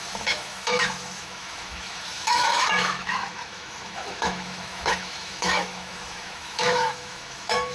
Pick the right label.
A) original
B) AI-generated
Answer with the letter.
B